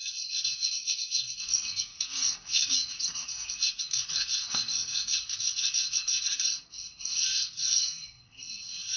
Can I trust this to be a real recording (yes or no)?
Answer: no